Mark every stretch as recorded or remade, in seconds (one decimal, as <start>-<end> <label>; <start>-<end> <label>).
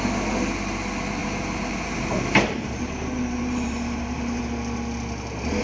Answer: 0.0-1.2 recorded; 1.2-4.4 remade; 4.4-5.6 recorded